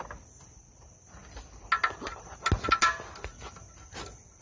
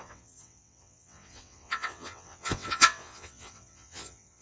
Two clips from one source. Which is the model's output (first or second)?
second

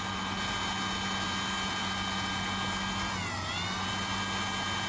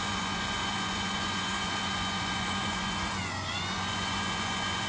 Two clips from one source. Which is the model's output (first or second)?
second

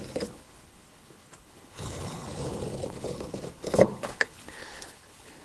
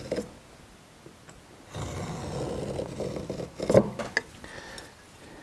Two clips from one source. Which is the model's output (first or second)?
first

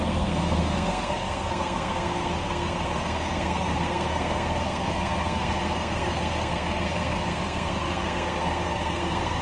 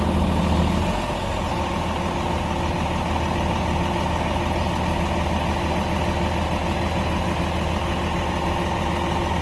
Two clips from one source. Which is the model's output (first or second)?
first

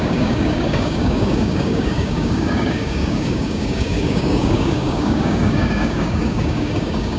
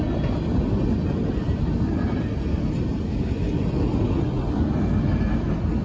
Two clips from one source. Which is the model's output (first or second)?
first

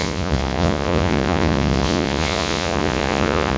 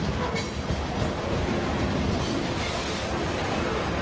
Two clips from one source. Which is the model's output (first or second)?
first